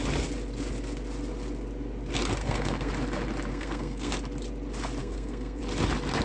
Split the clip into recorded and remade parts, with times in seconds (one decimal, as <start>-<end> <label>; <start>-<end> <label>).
0.0-2.4 recorded; 2.4-2.9 remade; 2.9-3.5 recorded; 3.5-4.1 remade; 4.1-5.0 recorded; 5.0-5.6 remade; 5.6-6.2 recorded